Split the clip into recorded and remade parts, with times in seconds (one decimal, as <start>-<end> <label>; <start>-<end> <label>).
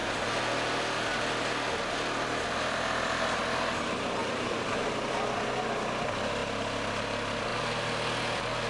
0.0-4.2 recorded; 4.2-5.1 remade; 5.1-8.7 recorded